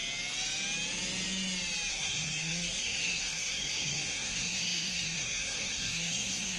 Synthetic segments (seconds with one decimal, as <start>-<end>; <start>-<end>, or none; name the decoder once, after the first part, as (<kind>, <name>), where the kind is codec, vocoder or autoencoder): 1.9-6.6 (codec, SNAC)